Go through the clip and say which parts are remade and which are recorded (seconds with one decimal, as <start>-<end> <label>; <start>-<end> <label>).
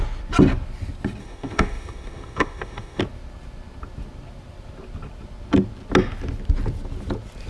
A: 0.0-1.2 recorded; 1.2-3.0 remade; 3.0-7.5 recorded